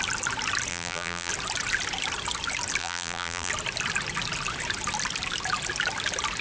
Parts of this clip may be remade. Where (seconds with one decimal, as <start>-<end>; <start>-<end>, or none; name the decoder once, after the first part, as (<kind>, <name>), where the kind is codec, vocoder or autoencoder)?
0.7-1.3 (vocoder, BigVGAN v2); 2.8-3.5